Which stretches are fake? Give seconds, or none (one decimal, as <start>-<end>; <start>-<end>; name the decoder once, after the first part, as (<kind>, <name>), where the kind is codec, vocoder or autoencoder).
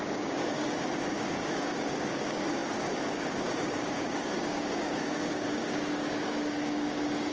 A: 0.0-7.3 (codec, DAC)